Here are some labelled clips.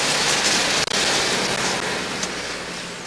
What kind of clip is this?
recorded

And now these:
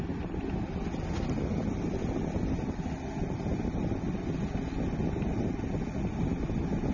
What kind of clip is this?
recorded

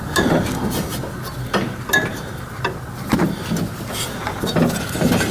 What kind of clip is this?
recorded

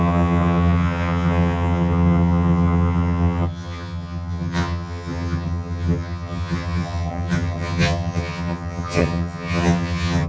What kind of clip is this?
remade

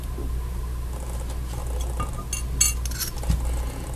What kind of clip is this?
recorded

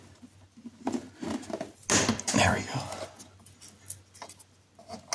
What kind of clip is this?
recorded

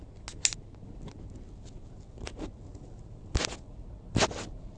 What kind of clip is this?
recorded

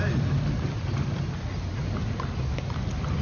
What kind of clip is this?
recorded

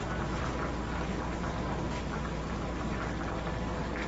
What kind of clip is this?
recorded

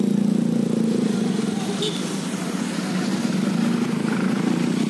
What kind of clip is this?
recorded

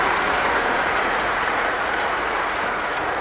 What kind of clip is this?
remade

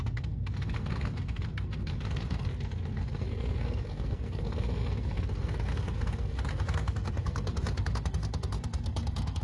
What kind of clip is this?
remade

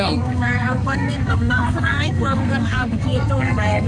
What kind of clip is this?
remade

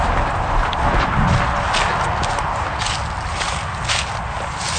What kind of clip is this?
recorded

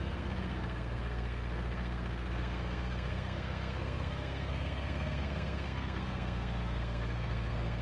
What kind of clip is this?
remade